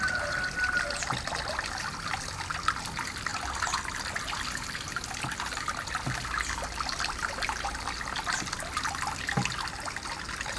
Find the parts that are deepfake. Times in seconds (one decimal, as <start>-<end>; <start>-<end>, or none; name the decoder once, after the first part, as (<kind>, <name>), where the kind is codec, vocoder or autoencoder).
none